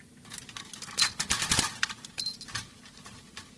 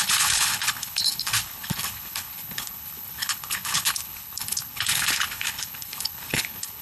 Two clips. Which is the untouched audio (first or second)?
first